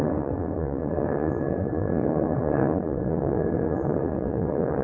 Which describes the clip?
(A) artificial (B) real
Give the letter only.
A